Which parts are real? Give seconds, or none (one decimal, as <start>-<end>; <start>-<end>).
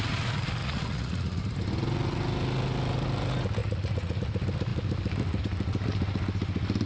0.0-0.6; 1.4-3.6; 4.2-6.9